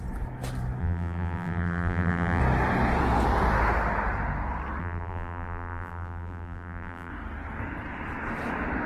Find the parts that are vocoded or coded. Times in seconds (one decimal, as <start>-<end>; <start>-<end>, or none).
0.8-2.4; 4.8-7.1